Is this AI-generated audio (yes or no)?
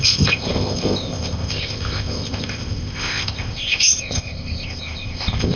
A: yes